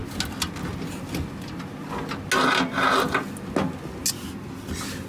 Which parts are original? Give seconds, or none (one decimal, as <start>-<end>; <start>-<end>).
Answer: 0.0-5.1